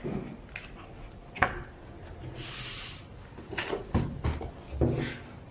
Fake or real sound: real